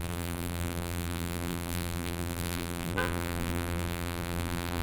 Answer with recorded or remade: remade